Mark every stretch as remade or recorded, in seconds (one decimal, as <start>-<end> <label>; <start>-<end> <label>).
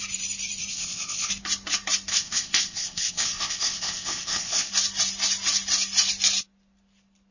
0.0-0.7 recorded; 0.7-1.3 remade; 1.3-2.1 recorded; 2.1-4.7 remade; 4.7-7.3 recorded